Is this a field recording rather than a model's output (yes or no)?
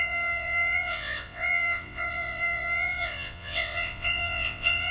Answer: no